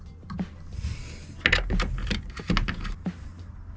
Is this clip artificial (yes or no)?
no